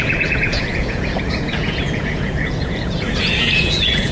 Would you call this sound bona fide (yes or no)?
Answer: no